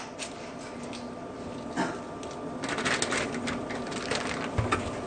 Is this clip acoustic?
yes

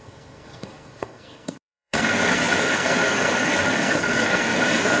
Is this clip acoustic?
no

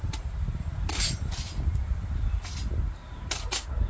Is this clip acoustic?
yes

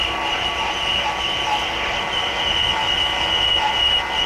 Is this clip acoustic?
yes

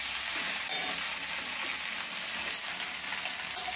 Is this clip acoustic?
yes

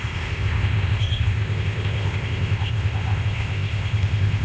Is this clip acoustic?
no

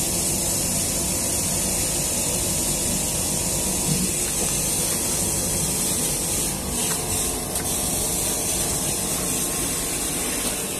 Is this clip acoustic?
yes